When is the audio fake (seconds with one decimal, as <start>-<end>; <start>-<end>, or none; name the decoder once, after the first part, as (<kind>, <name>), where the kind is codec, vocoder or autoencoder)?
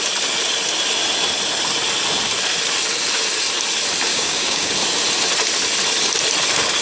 4.1-4.7 (codec, DAC)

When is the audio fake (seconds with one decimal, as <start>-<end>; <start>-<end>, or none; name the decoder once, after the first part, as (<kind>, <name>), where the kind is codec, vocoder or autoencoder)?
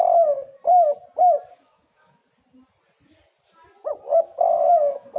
0.0-0.6 (codec, DAC); 1.5-2.2; 4.2-5.2